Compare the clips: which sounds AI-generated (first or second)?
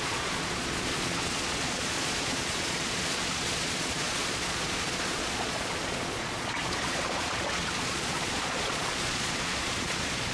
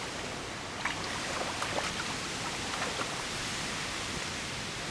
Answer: first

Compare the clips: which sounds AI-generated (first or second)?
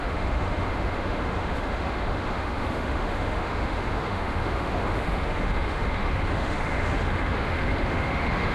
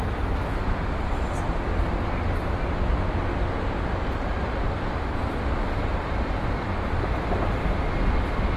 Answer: first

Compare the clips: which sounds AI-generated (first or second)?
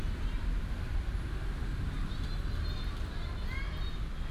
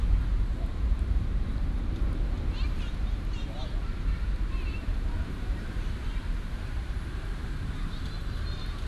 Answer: second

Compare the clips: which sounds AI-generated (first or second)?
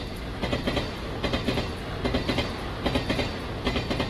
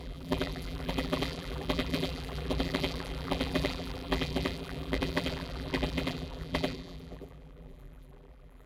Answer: second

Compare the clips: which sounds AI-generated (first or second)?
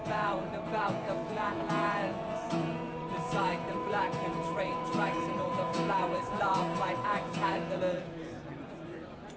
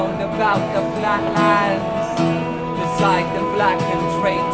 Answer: first